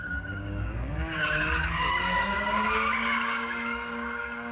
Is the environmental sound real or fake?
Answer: fake